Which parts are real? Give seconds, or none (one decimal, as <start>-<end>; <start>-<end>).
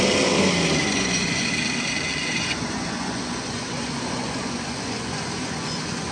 0.0-0.8; 1.5-2.2